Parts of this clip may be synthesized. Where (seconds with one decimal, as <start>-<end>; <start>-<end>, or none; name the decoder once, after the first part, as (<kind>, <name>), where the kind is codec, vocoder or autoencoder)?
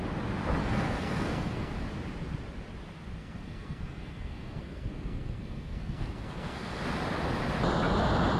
0.6-1.7 (codec, SNAC); 3.2-6.8